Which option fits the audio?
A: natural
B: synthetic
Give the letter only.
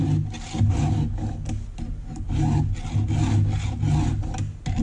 A